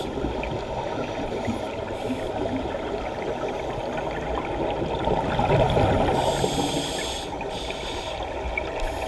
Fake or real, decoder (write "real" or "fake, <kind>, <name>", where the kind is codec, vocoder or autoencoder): real